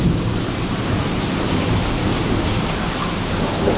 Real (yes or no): yes